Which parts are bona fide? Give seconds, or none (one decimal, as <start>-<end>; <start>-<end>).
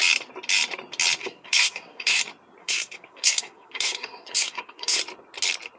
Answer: 0.0-1.2; 2.2-2.6; 5.0-5.8